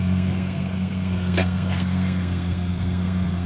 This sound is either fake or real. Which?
fake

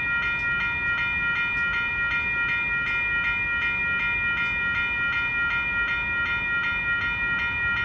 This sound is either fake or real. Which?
real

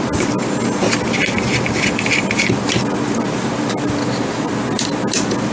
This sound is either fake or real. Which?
real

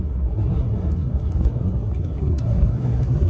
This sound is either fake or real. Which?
fake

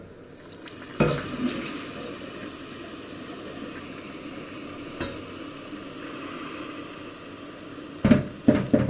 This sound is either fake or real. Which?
real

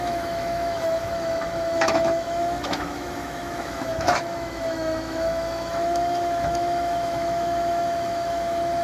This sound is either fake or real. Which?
fake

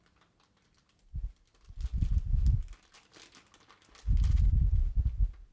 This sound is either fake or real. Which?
real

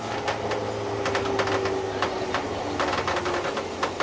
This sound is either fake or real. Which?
real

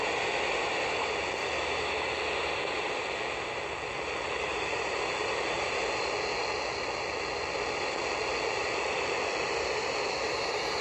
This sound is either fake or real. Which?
real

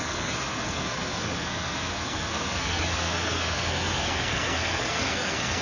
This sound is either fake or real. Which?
fake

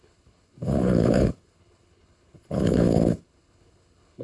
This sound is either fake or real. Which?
fake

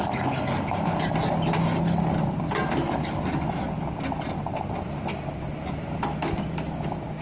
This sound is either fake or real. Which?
real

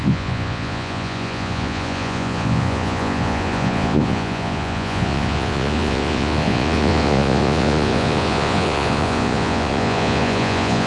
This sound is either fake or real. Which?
fake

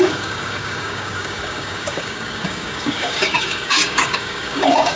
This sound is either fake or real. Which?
fake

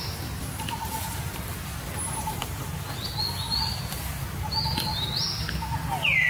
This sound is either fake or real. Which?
real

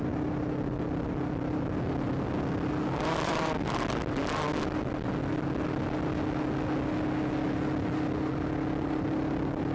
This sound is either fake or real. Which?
real